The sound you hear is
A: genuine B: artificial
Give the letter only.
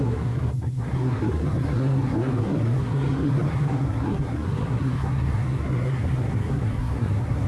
B